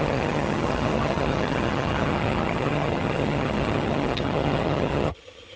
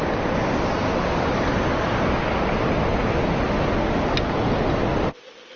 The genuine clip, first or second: second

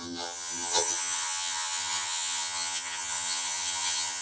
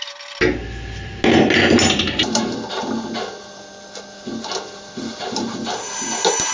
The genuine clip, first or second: second